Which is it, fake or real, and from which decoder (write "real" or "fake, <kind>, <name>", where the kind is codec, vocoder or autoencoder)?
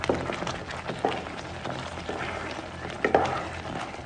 real